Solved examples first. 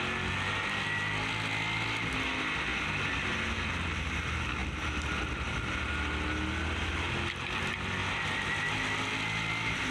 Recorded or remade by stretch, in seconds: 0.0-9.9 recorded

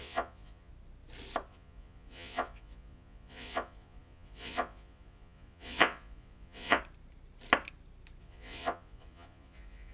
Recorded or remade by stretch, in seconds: 0.0-0.7 remade; 0.7-1.5 recorded; 1.5-6.8 remade; 6.8-8.2 recorded; 8.2-9.9 remade

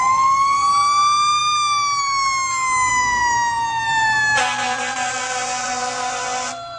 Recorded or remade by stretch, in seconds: 0.0-2.9 recorded; 2.9-6.8 remade

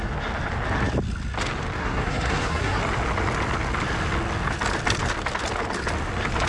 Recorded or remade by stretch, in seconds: 0.0-1.8 recorded; 1.8-2.8 remade; 2.8-6.5 recorded

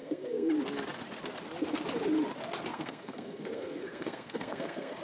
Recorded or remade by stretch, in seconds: 0.0-0.5 remade; 0.5-2.7 recorded; 2.7-5.0 remade

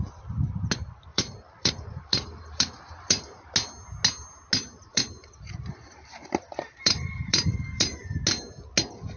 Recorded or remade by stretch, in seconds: 0.0-1.1 recorded; 1.1-3.4 remade; 3.4-4.9 recorded; 4.9-8.2 remade; 8.2-9.2 recorded